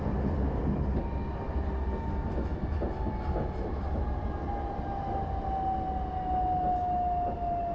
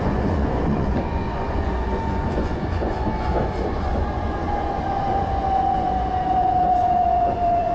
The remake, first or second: second